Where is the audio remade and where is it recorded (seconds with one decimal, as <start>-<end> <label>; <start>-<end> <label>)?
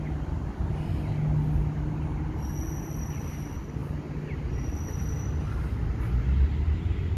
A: 0.0-7.2 recorded